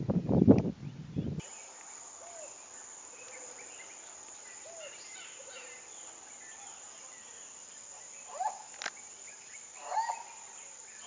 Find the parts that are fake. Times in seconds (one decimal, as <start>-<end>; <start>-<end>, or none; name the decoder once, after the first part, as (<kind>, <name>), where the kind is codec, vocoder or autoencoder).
none